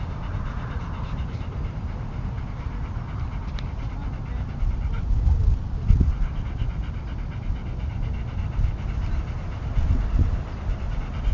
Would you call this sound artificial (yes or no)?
no